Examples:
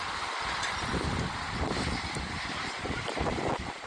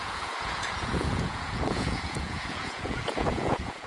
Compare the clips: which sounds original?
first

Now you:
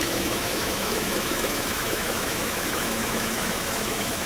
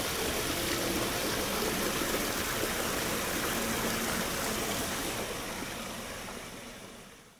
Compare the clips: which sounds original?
second